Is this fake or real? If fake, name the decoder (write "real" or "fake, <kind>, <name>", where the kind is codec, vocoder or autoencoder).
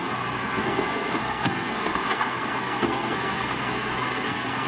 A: fake, codec, SNAC